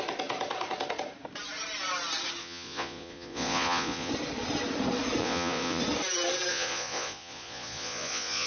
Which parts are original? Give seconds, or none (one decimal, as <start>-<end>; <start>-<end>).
0.0-2.4; 4.1-5.2; 5.8-6.5